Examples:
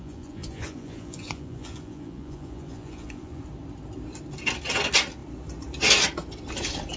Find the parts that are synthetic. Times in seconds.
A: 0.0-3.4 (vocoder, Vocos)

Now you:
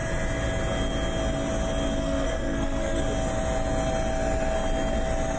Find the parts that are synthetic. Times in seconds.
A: 2.0-3.0 (codec, SNAC)

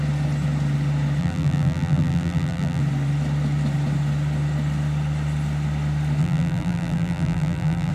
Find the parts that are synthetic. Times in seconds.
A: 1.2-2.8 (vocoder, BigVGAN v2); 6.2-7.9

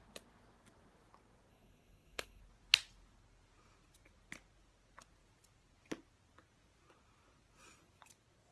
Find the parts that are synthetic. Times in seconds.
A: 1.5-2.4 (codec, SNAC)

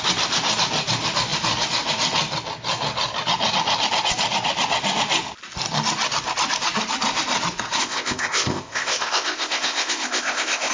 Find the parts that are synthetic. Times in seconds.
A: 7.8-10.7 (codec, ZipCodec)

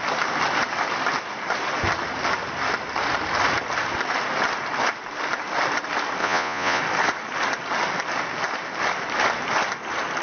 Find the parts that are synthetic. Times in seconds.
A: 6.2-6.8 (vocoder, Vocos)

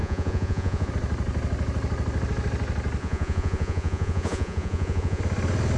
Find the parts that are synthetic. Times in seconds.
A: 0.0-0.9 (vocoder, Vocos); 3.0-5.2

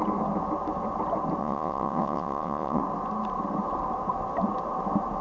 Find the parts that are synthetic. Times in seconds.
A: 1.4-2.8 (vocoder, WaveNeXt)